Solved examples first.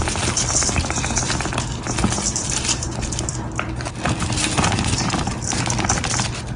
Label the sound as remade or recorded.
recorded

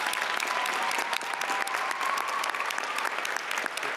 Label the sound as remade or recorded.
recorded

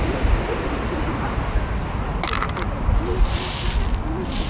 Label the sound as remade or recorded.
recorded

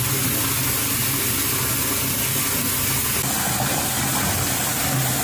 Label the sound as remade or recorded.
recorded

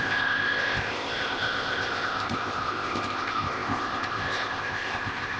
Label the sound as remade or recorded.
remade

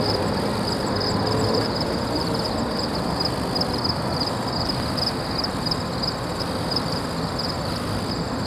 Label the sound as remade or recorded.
recorded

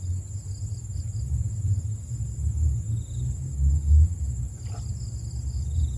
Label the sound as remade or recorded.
recorded